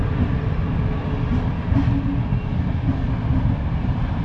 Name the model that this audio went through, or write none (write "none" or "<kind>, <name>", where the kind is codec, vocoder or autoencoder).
none